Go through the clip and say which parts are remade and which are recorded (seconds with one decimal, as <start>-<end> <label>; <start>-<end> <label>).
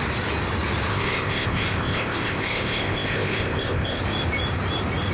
0.0-0.9 recorded; 0.9-4.0 remade; 4.0-5.1 recorded